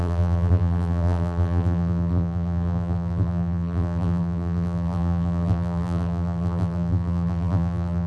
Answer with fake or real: fake